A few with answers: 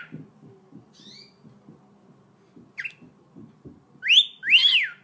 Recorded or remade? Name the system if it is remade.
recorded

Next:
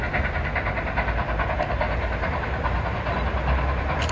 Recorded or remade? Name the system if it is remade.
recorded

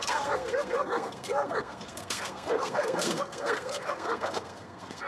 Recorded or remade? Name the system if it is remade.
remade, codec, SNAC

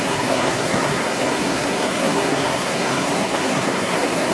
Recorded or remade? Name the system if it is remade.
remade, codec, SNAC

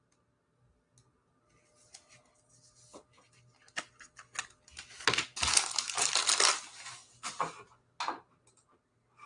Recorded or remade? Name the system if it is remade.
recorded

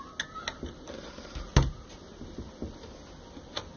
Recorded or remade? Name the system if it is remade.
recorded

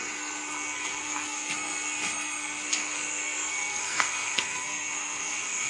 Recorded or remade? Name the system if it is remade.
remade, codec, SNAC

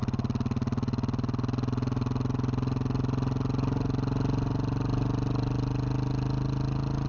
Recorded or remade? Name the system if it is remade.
recorded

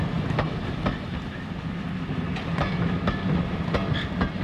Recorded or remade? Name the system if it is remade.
recorded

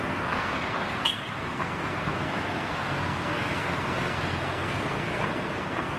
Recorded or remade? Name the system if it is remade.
remade, codec, SNAC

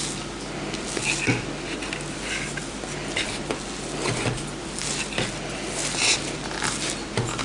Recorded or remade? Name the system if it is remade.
recorded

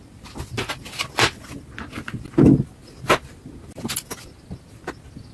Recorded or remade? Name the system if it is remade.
recorded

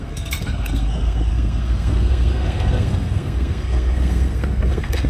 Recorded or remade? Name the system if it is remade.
remade, codec, SNAC